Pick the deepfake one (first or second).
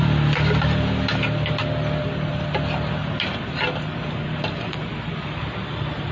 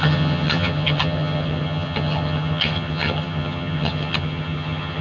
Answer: second